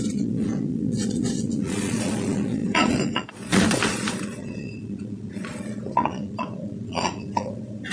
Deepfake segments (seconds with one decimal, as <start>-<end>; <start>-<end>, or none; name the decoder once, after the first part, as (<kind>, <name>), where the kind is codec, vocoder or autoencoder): 0.0-7.9 (vocoder, Vocos)